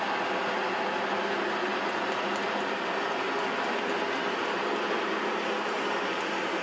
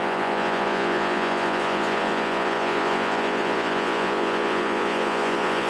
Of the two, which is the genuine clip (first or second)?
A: first